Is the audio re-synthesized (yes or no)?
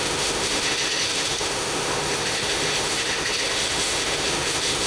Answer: yes